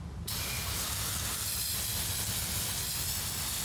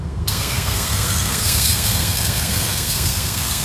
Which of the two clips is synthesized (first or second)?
second